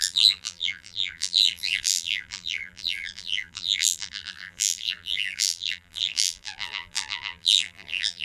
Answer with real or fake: fake